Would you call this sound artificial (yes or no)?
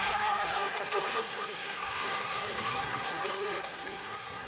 yes